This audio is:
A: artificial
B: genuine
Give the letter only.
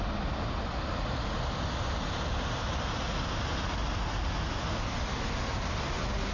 B